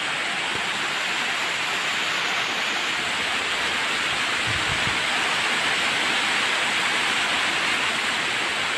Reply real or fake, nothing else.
real